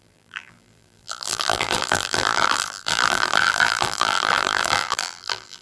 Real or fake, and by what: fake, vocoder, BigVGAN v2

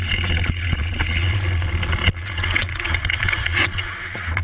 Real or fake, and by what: fake, vocoder, Vocos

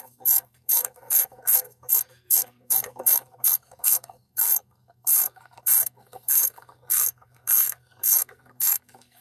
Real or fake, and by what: fake, codec, SNAC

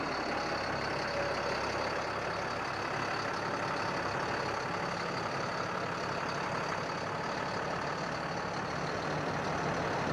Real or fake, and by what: real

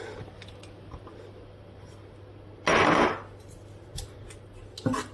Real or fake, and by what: real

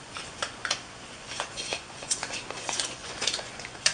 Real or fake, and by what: fake, vocoder, Vocos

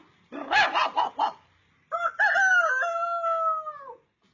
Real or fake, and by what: real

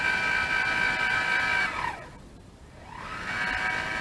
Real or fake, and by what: real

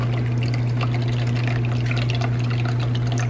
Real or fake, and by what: real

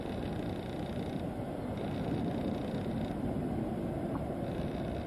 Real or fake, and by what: real